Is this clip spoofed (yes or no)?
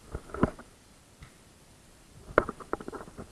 yes